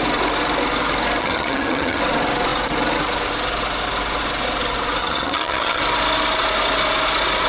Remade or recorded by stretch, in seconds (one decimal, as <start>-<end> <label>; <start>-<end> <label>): 0.0-1.2 recorded; 1.2-2.0 remade; 2.0-5.0 recorded; 5.0-5.8 remade; 5.8-7.5 recorded

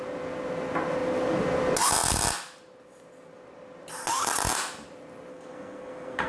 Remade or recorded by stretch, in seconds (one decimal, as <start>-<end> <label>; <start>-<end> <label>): 0.0-5.3 recorded; 5.3-6.3 remade

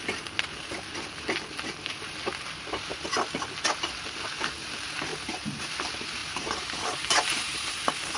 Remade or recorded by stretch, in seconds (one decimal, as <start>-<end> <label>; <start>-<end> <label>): 0.0-5.1 recorded; 5.1-5.7 remade; 5.7-6.2 recorded; 6.2-7.7 remade; 7.7-8.2 recorded